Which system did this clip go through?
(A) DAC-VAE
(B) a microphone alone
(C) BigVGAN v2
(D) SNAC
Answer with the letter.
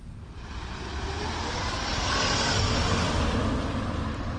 B